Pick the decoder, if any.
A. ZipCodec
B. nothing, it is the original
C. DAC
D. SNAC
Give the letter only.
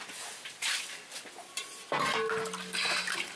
B